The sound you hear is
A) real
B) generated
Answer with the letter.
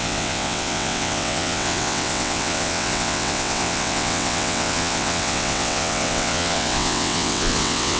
B